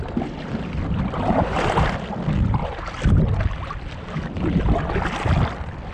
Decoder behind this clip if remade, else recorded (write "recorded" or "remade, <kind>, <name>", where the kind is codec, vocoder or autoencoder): recorded